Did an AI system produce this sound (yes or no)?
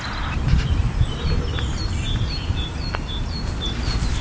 yes